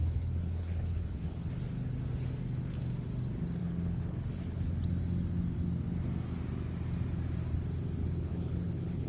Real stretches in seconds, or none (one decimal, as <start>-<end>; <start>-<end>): 1.5-3.6; 4.7-8.0